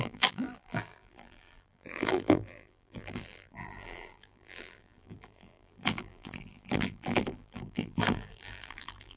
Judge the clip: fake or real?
fake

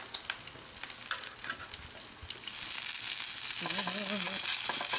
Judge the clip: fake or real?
real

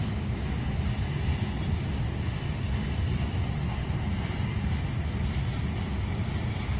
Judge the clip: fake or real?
real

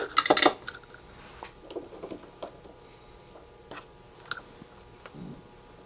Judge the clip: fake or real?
real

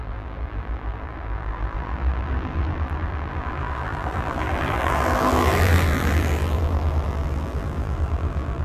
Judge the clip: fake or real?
fake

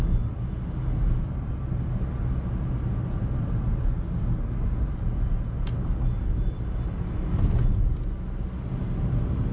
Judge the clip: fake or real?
real